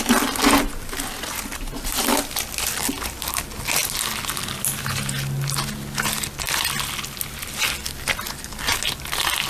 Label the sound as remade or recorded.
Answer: recorded